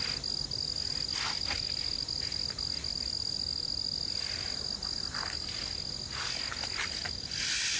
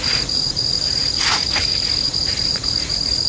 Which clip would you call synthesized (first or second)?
second